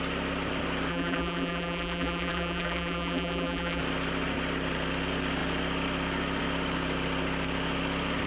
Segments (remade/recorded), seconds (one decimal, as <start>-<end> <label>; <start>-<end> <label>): 0.0-0.9 recorded; 0.9-3.8 remade; 3.8-8.3 recorded